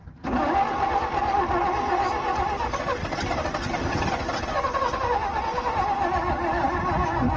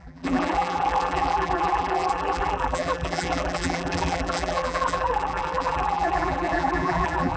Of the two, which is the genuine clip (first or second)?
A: first